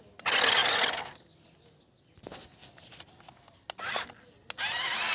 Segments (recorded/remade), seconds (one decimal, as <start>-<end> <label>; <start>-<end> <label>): 0.0-5.1 recorded